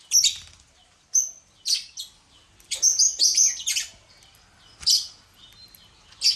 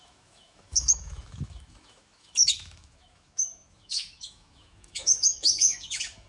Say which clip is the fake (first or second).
second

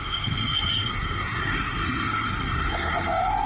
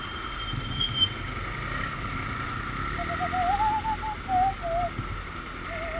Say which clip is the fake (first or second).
first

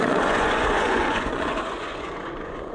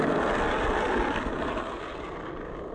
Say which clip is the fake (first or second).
first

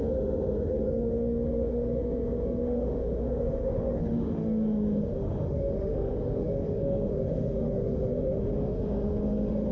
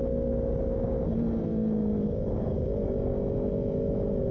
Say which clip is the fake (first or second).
first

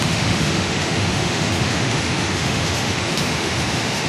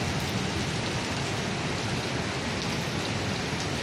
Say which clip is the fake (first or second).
first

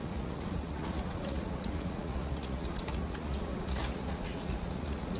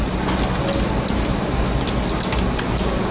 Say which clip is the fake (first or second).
first